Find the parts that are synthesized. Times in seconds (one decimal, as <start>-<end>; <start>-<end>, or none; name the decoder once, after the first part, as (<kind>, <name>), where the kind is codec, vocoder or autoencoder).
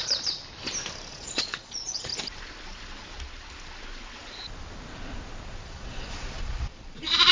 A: 0.0-0.4 (vocoder, Vocos); 1.1-2.1; 5.6-7.3